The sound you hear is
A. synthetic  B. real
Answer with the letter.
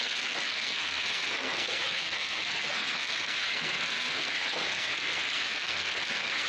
A